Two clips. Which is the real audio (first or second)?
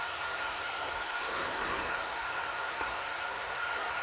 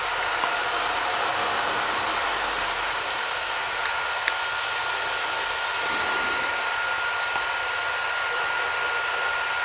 second